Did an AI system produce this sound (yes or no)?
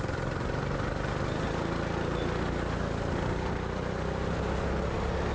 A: no